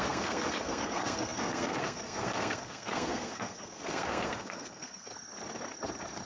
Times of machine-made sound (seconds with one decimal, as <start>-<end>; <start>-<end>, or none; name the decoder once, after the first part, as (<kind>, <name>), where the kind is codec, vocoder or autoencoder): 0.0-5.1 (codec, SNAC)